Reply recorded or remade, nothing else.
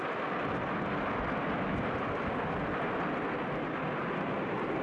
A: recorded